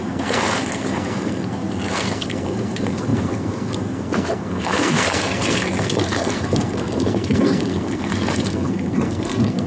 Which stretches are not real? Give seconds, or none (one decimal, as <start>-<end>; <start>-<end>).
0.0-9.7